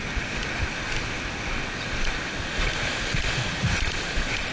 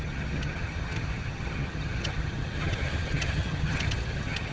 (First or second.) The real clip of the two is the first